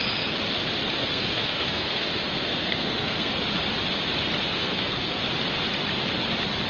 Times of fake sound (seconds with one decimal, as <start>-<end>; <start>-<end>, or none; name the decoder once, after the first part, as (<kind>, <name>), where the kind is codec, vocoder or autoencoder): 1.0-3.3 (codec, SNAC); 4.6-5.2